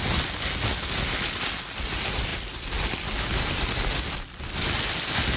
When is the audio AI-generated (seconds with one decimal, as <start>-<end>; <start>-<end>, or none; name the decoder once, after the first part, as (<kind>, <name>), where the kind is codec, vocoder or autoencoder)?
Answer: none